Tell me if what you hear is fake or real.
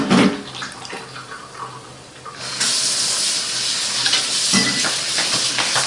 real